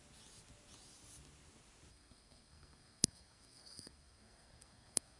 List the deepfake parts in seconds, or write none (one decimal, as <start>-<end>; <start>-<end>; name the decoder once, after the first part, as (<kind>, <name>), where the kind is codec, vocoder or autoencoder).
1.9-5.2 (codec, SNAC)